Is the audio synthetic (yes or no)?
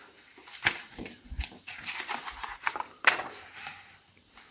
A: yes